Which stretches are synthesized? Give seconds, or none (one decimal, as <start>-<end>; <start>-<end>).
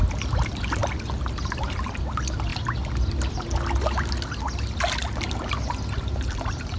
none